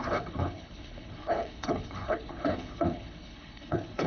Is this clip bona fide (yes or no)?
no